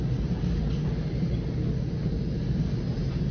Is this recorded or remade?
recorded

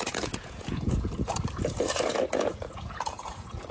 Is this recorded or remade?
remade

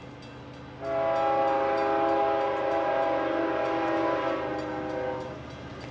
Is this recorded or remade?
recorded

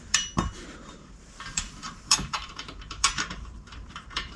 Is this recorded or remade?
remade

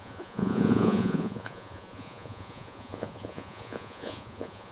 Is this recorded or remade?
remade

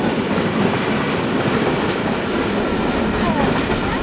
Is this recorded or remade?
recorded